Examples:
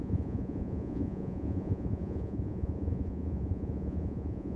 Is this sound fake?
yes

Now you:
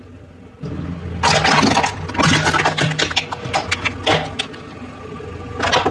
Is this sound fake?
no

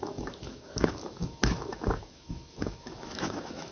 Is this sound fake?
yes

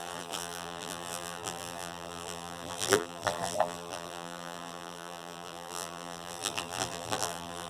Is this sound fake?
yes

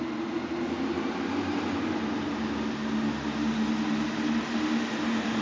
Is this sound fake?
no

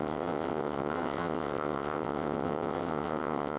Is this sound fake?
yes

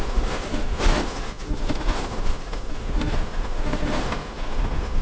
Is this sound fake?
yes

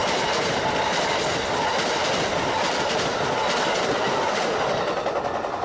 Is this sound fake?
no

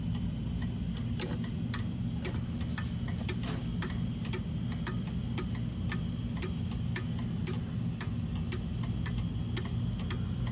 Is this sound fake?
no